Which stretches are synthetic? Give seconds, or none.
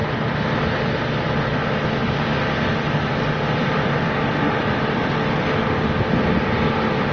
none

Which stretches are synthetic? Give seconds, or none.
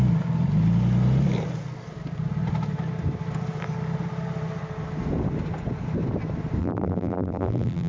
6.6-7.9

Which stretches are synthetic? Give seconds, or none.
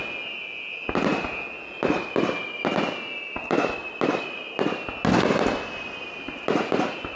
none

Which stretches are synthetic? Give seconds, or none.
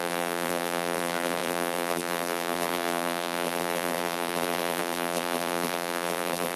0.0-6.6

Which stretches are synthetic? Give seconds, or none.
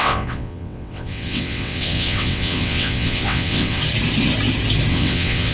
0.0-3.8; 4.9-5.5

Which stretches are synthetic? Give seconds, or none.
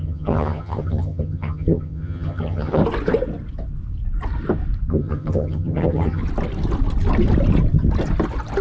0.0-2.8; 4.9-6.2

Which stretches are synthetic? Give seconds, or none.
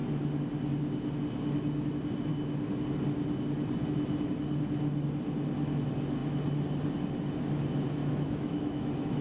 8.0-9.2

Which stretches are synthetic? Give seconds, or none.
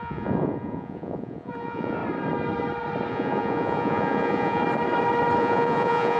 0.0-2.0; 3.1-4.6; 5.4-6.2